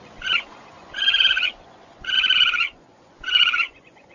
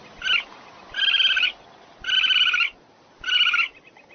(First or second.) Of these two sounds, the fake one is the first